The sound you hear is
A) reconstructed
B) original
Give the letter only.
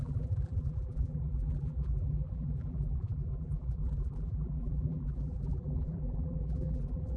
A